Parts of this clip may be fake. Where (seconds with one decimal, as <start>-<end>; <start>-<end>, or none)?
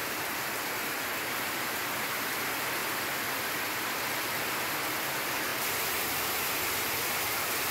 0.0-1.8; 5.5-6.7